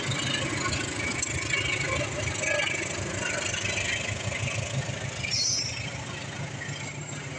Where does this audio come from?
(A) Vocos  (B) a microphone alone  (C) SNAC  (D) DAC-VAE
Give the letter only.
B